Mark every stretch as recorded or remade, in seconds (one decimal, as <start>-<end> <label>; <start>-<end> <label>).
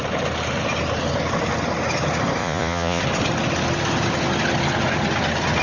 0.0-2.4 recorded; 2.4-3.0 remade; 3.0-5.6 recorded